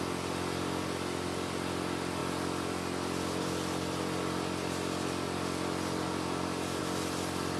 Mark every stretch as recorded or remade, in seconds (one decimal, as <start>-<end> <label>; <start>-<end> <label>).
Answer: 0.0-7.6 recorded